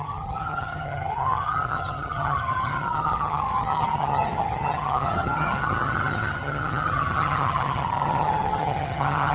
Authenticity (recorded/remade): remade